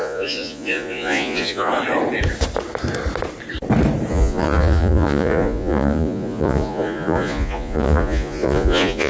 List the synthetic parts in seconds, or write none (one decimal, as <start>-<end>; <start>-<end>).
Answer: 0.0-1.7; 4.1-9.1